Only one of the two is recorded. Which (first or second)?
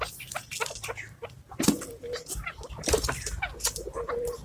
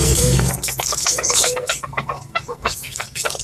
first